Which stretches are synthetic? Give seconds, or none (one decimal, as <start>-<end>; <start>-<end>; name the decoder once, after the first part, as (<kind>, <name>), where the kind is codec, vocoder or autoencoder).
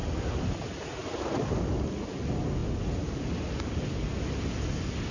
none